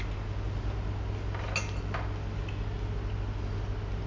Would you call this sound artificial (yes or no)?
no